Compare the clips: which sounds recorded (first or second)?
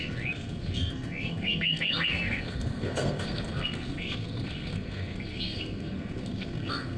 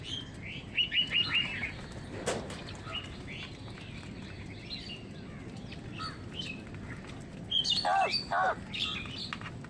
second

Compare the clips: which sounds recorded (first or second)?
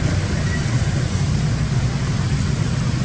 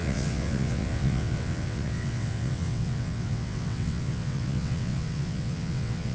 first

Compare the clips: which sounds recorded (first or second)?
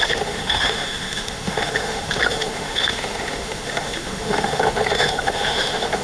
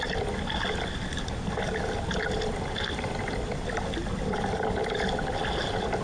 second